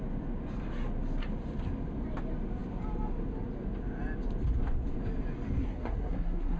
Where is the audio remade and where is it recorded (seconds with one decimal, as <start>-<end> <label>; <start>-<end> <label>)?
0.0-5.6 recorded; 5.6-6.6 remade

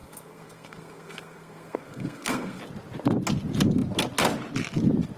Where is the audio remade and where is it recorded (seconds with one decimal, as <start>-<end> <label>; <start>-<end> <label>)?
0.0-2.6 remade; 2.6-5.2 recorded

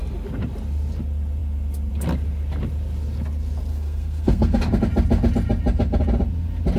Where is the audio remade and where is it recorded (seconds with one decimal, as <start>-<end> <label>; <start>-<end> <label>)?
0.0-3.7 recorded; 3.7-4.6 remade; 4.6-6.8 recorded

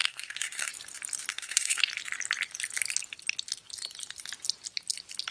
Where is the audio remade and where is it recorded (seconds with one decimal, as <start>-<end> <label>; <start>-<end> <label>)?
0.0-0.7 remade; 0.7-1.3 recorded; 1.3-1.8 remade; 1.8-5.3 recorded